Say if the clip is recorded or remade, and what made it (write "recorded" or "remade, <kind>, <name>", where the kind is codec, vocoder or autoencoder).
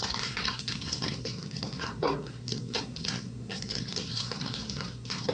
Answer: remade, codec, SNAC